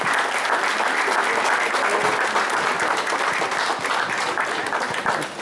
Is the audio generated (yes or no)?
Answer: no